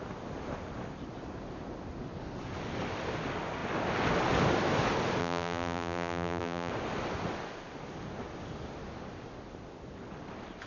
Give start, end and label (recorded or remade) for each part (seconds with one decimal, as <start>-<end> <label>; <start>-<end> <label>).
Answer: 0.0-5.2 recorded; 5.2-6.7 remade; 6.7-10.7 recorded